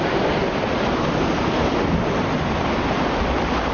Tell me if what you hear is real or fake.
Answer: real